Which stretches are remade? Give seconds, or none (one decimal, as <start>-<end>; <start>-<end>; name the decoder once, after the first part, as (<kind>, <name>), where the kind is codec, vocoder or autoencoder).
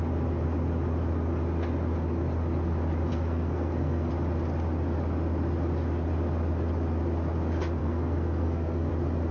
3.1-4.1 (codec, SNAC); 7.8-8.9